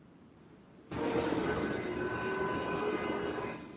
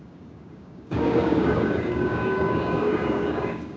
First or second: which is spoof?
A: second